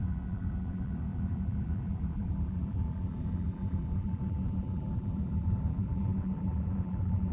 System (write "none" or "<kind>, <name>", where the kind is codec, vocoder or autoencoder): vocoder, BigVGAN v2